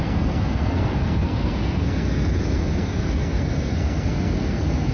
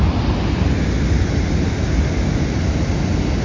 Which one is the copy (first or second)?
first